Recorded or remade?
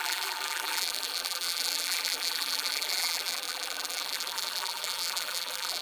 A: remade